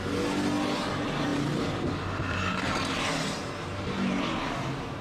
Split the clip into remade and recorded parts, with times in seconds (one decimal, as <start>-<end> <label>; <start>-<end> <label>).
0.0-5.0 recorded